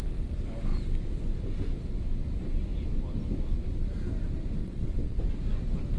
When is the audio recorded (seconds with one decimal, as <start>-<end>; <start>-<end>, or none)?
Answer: 0.0-4.6; 5.2-6.0